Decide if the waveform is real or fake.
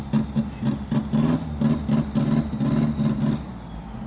real